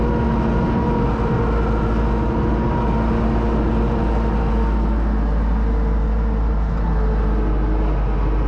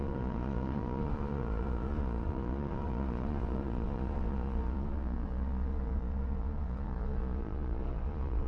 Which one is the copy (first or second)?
second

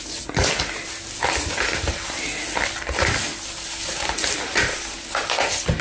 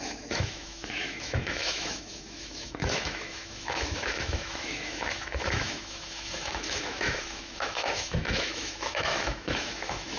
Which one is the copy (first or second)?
second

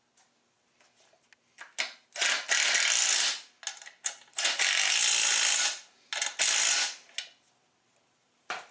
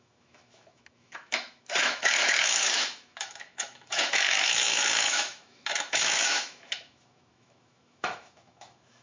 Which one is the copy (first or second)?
second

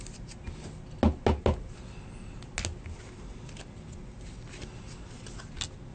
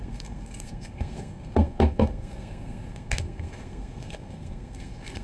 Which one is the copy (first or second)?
second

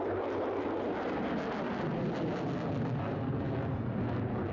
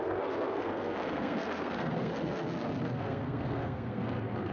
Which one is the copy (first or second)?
second